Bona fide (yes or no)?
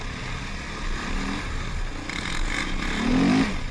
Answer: yes